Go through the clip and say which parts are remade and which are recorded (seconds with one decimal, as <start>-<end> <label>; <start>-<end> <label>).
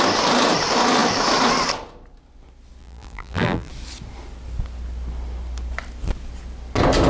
0.0-2.8 recorded; 2.8-3.7 remade; 3.7-7.1 recorded